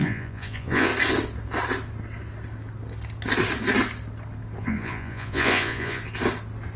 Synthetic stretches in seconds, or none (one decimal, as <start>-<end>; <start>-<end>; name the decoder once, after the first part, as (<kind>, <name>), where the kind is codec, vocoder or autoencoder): 0.0-0.9 (vocoder, Vocos); 4.6-6.0